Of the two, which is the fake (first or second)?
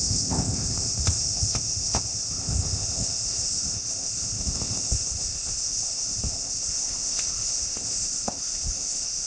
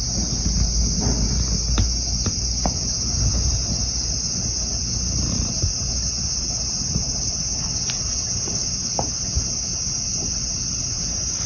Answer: first